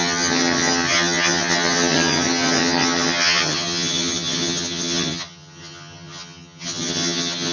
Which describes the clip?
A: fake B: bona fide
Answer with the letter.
A